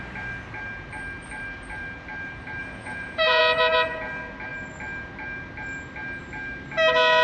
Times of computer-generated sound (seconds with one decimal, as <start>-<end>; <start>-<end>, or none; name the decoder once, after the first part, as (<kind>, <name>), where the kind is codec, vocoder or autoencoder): 2.6-3.4 (vocoder, Vocos)